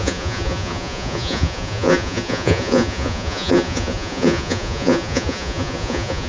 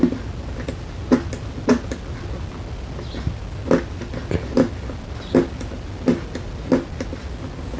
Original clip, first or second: second